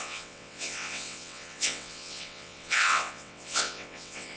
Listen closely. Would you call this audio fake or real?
fake